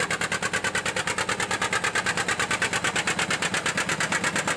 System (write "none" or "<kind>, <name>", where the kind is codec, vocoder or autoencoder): none